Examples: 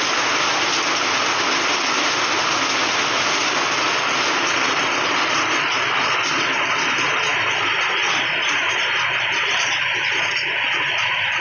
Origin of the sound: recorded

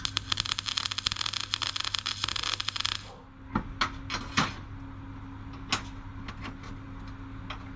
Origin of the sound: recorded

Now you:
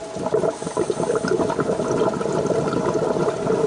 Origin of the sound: recorded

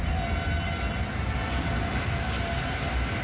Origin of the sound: recorded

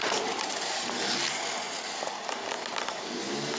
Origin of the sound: recorded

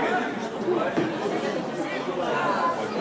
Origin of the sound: recorded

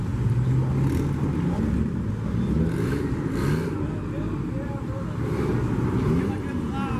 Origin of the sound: recorded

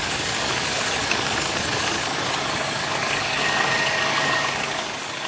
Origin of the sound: remade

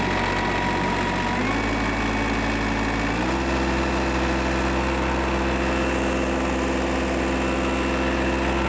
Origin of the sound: recorded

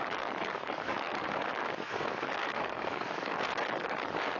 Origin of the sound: remade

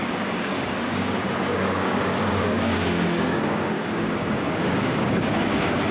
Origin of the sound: remade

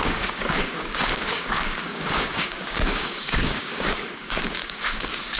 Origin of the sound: remade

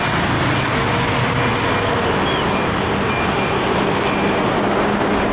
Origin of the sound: recorded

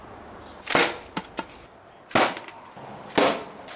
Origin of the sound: recorded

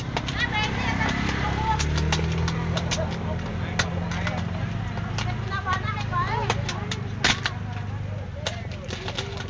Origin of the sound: recorded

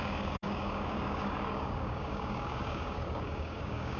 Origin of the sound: remade